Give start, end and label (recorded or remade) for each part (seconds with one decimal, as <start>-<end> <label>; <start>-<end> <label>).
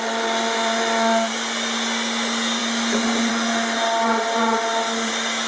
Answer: 0.0-5.5 recorded